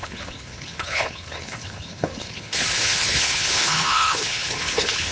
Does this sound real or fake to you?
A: fake